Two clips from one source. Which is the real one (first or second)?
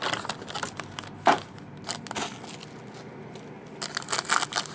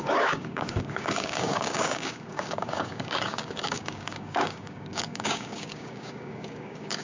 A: first